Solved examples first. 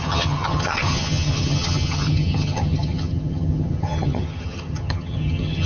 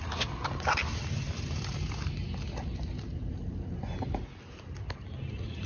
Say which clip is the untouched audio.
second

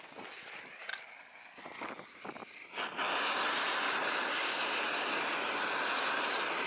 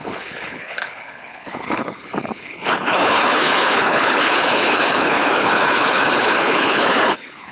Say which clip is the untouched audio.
first